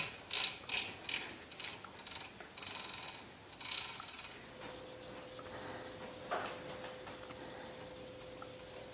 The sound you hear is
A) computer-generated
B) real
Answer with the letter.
B